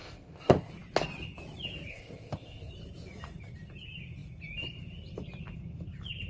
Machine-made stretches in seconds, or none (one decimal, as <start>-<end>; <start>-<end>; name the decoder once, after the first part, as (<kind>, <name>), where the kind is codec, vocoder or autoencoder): 0.0-0.7 (codec, ZipCodec); 1.9-2.7